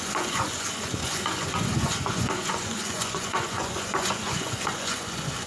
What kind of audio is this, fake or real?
fake